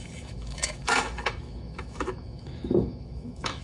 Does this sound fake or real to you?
fake